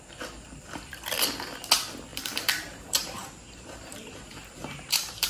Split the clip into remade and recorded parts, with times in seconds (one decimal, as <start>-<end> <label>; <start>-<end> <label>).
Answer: 0.0-2.1 recorded; 2.1-5.3 remade